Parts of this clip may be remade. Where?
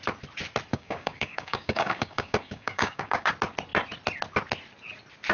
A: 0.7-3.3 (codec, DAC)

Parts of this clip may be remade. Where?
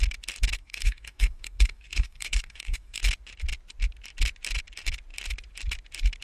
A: 0.6-3.0 (codec, DAC)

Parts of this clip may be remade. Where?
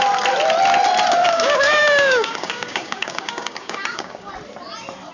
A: 1.2-4.3 (codec, DAC)